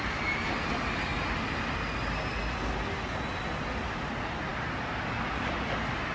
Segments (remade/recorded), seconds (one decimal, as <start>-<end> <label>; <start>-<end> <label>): 0.0-6.1 recorded